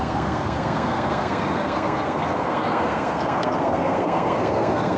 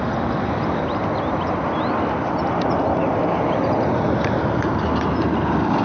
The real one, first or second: second